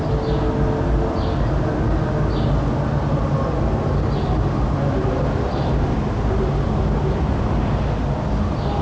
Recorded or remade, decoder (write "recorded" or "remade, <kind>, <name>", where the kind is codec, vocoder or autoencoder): recorded